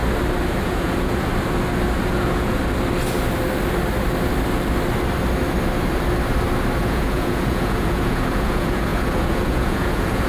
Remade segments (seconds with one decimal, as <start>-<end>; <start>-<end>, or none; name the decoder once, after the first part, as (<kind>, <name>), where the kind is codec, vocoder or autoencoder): 0.5-1.3 (vocoder, Vocos); 2.1-2.6; 6.8-10.3